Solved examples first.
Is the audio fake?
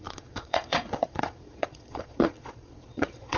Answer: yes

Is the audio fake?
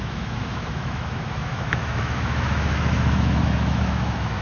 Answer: yes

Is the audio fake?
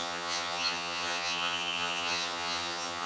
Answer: yes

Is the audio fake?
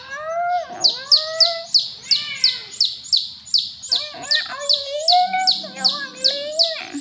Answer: no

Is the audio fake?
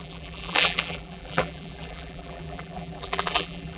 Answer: yes